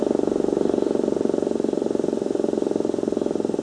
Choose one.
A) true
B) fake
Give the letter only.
A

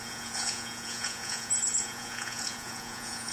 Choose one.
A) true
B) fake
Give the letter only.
B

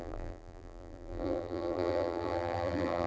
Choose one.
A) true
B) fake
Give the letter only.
B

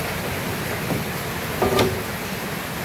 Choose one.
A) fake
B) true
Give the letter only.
B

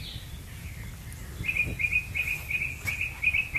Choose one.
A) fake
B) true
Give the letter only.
B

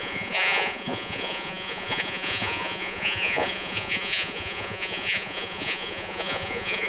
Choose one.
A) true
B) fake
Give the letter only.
B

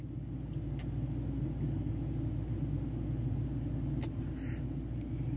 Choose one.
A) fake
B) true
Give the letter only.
B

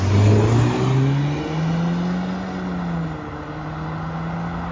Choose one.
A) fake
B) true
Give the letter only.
B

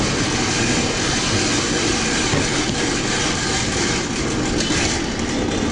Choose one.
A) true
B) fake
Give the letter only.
A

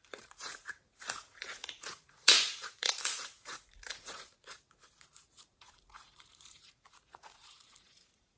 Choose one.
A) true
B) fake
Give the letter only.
B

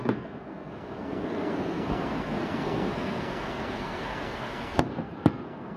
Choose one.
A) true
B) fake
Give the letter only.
B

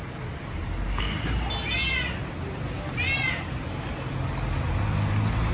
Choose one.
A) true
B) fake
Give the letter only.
A